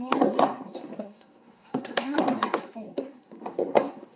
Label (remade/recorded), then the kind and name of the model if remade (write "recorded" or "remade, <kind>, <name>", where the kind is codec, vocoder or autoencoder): remade, codec, SNAC